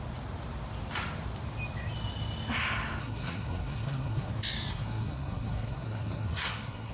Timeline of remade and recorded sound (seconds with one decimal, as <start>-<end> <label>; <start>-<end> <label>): 0.0-3.0 recorded; 3.0-4.3 remade; 4.3-4.7 recorded; 4.7-6.9 remade